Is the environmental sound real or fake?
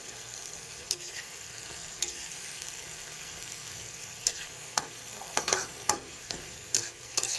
fake